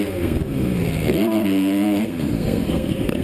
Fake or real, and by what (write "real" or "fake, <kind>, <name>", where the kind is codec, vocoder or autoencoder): fake, codec, SNAC